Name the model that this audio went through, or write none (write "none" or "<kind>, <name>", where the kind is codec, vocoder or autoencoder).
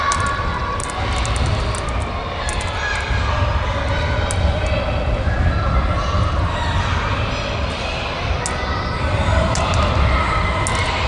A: none